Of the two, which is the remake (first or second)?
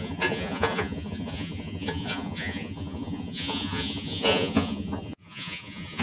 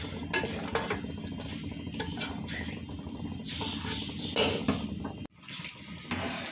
first